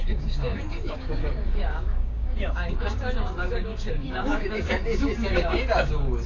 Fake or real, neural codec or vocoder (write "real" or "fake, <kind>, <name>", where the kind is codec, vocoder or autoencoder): fake, codec, DAC